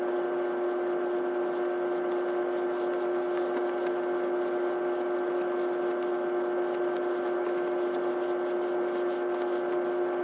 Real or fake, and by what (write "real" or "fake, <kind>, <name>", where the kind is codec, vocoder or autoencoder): real